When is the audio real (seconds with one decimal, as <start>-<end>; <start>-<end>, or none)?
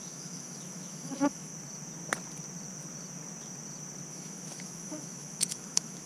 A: 1.5-4.1